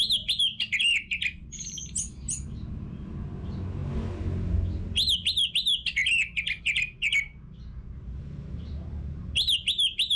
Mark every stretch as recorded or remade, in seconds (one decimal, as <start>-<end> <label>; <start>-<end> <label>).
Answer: 0.0-10.2 recorded